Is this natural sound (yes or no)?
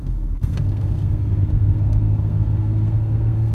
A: no